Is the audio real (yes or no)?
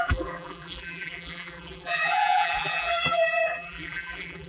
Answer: no